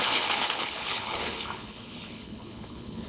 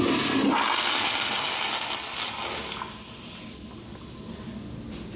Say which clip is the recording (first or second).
second